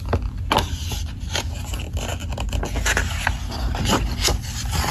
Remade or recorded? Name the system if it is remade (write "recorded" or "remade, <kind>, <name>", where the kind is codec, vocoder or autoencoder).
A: recorded